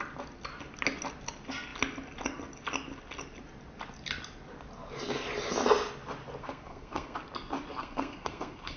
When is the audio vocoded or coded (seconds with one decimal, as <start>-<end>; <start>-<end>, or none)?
6.4-7.2; 7.8-8.8